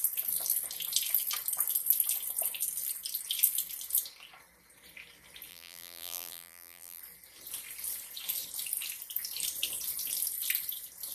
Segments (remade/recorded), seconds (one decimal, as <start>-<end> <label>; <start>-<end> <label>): 0.0-5.5 recorded; 5.5-7.0 remade; 7.0-11.1 recorded